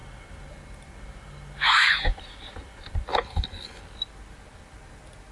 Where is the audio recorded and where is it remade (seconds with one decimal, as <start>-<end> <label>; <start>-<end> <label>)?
0.0-3.1 recorded; 3.1-3.8 remade; 3.8-5.3 recorded

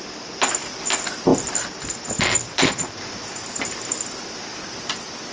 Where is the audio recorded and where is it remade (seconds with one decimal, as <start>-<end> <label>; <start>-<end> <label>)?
0.0-5.3 recorded

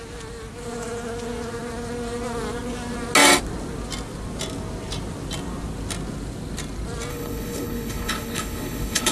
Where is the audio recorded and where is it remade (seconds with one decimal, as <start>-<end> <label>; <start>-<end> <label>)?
0.0-7.1 recorded; 7.1-9.1 remade

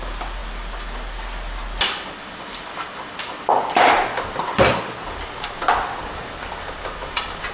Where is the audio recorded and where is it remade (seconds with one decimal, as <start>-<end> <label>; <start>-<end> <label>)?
0.0-7.5 recorded

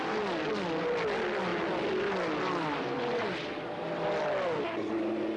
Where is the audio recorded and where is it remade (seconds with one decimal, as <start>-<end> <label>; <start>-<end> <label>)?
0.0-5.4 recorded

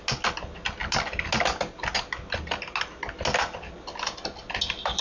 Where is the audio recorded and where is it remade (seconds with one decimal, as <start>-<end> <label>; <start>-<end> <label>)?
0.0-5.0 recorded